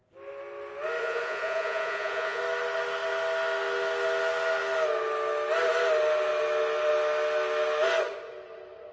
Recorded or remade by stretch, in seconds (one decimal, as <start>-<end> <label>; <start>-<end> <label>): 0.0-1.0 recorded; 1.0-2.4 remade; 2.4-8.9 recorded

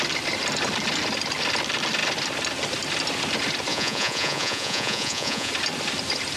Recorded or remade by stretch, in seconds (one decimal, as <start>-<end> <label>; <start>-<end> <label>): 0.0-3.7 recorded; 3.7-5.5 remade; 5.5-6.4 recorded

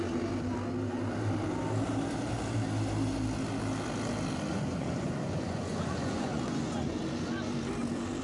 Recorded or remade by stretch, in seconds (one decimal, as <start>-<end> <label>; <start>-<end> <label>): 0.0-4.5 recorded; 4.5-7.0 remade; 7.0-8.2 recorded

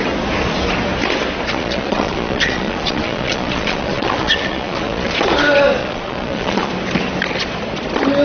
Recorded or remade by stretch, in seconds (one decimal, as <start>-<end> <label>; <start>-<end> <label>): 0.0-1.5 recorded; 1.5-5.2 remade; 5.2-5.8 recorded; 5.8-6.7 remade; 6.7-8.2 recorded

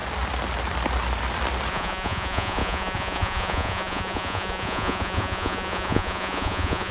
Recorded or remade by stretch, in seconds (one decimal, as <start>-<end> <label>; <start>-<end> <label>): 0.0-1.7 recorded; 1.7-6.9 remade

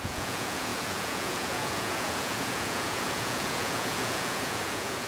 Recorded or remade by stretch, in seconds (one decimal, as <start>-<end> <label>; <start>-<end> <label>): 0.0-5.1 remade